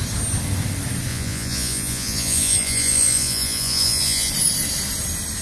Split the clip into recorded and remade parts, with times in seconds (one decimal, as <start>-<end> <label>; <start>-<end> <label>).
0.0-1.1 recorded; 1.1-4.3 remade; 4.3-5.4 recorded